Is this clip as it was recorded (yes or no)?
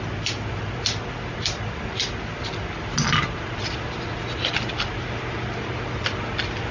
yes